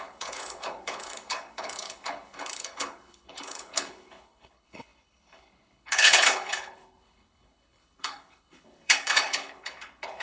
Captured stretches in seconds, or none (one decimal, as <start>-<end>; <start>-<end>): none